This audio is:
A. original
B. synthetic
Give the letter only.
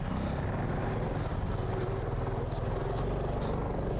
A